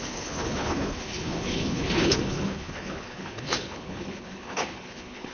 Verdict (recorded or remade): remade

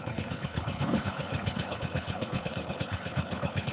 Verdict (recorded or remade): remade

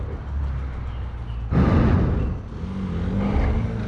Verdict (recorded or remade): recorded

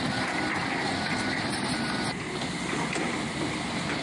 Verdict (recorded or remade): recorded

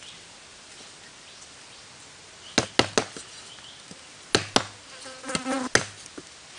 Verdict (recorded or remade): recorded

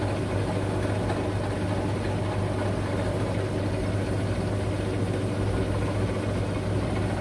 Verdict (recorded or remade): recorded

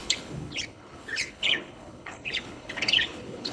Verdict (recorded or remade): remade